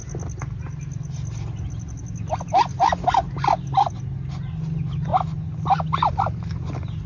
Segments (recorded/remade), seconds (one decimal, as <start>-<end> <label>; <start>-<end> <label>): 0.0-7.1 recorded